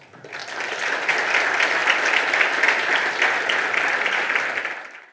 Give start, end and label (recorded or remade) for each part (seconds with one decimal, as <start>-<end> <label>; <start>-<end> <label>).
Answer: 0.0-5.1 recorded